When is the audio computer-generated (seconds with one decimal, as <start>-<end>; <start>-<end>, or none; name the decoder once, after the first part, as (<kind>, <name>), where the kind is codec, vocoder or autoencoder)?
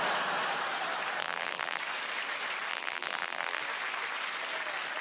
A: 1.2-1.8 (vocoder, BigVGAN v2); 2.7-3.6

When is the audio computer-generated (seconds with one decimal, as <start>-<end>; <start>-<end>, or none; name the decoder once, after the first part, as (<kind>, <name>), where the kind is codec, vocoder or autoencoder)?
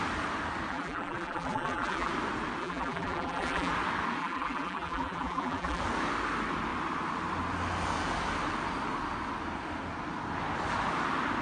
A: 0.7-2.1 (vocoder, BigVGAN v2); 2.6-3.7; 4.2-5.8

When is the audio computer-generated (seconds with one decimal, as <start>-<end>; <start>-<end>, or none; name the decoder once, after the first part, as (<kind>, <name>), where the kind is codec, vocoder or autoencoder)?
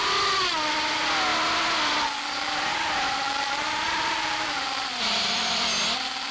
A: 3.3-5.8 (vocoder, BigVGAN v2)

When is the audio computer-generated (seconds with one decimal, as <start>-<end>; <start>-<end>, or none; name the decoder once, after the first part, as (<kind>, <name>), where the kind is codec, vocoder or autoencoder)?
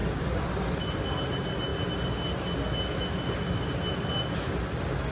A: 0.0-1.0 (vocoder, BigVGAN v2)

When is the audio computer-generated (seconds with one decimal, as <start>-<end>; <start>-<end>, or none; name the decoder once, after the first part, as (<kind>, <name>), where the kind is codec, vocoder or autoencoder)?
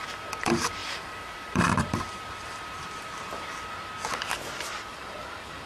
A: 0.0-3.9 (vocoder, BigVGAN v2); 4.9-5.7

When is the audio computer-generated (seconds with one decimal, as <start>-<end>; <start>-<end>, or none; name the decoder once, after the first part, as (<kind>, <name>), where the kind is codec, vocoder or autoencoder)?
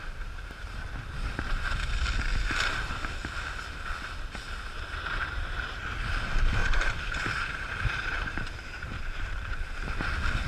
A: 5.2-5.8 (vocoder, BigVGAN v2); 6.6-9.9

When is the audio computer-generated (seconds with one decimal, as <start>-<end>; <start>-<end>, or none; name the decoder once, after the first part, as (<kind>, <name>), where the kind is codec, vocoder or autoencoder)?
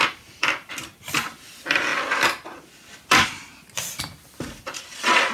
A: 0.0-1.9 (vocoder, BigVGAN v2); 4.0-5.3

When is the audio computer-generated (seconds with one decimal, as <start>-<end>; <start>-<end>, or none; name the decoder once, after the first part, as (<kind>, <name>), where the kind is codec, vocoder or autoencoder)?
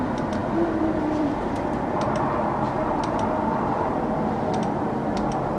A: 0.4-2.2 (vocoder, BigVGAN v2); 3.5-4.2